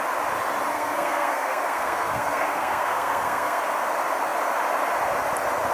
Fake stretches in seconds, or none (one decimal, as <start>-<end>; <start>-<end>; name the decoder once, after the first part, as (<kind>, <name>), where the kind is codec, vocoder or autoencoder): 0.7-3.6 (codec, SNAC)